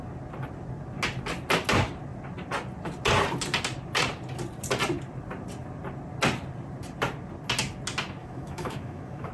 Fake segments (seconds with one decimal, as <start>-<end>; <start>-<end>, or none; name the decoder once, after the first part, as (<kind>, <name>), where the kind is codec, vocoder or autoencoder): 8.2-9.3 (autoencoder, DAC-VAE)